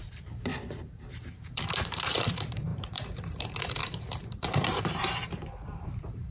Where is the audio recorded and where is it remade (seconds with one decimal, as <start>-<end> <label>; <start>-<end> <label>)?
0.0-6.3 remade